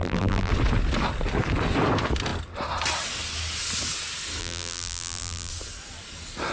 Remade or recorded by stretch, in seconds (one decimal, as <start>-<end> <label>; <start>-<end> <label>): 0.0-0.5 remade; 0.5-4.4 recorded; 4.4-5.5 remade; 5.5-6.5 recorded